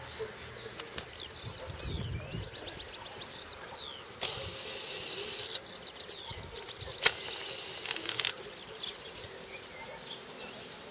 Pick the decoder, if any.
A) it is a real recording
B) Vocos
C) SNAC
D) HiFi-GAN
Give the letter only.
A